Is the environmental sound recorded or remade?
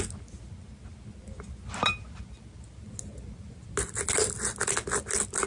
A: recorded